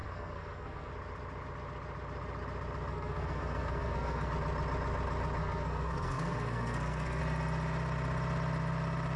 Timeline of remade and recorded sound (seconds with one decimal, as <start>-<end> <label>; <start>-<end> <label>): 0.0-0.9 remade; 0.9-2.9 recorded; 2.9-4.3 remade; 4.3-5.4 recorded; 5.4-7.2 remade; 7.2-9.2 recorded